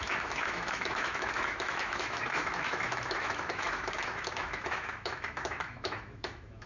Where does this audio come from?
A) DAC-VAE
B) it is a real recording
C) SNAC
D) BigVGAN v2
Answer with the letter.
A